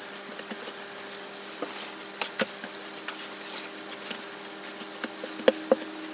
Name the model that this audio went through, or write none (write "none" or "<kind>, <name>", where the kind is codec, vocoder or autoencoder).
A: none